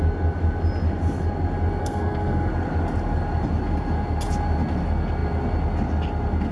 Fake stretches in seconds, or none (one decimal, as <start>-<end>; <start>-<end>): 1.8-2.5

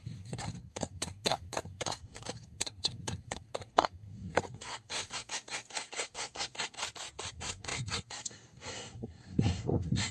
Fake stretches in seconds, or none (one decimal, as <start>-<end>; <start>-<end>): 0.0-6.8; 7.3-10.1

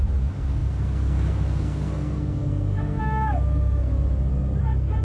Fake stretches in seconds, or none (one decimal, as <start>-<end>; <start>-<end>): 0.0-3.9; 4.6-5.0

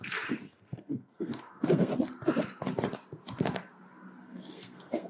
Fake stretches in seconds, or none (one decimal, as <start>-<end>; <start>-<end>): 0.0-1.9; 4.2-5.1

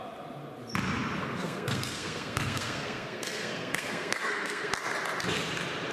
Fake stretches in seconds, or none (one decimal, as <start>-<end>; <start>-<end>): 1.2-4.7

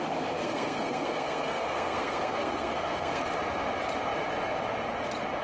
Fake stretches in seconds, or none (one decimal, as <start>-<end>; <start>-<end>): 0.4-3.2

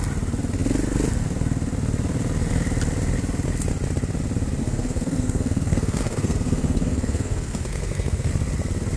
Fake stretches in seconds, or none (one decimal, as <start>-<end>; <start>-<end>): 4.6-8.3